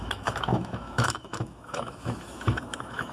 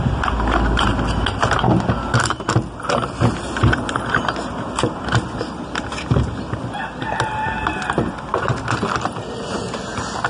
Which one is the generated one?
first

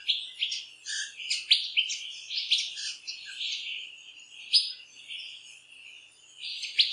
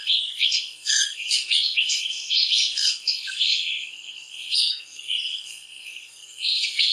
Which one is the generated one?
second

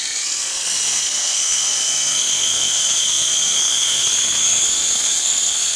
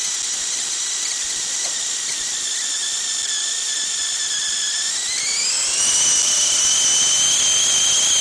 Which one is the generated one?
first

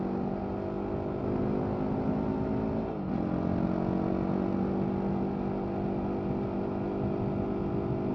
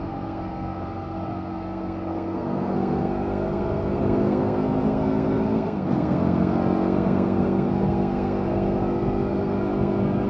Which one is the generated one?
second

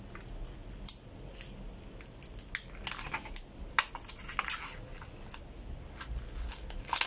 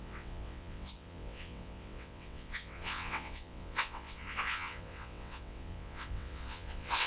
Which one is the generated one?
second